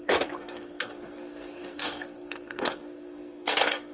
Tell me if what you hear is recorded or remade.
remade